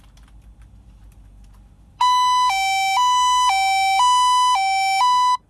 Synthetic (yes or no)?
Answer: no